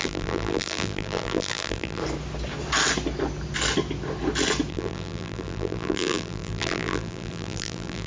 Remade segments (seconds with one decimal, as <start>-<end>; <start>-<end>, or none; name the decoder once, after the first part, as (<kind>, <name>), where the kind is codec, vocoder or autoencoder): 0.0-2.0 (vocoder, BigVGAN v2); 4.7-8.1